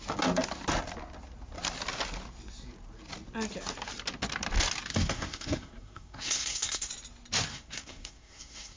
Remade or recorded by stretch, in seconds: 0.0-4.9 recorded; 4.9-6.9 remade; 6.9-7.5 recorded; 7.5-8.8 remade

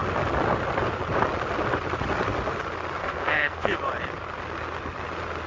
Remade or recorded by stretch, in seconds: 0.0-3.0 recorded; 3.0-3.7 remade; 3.7-5.5 recorded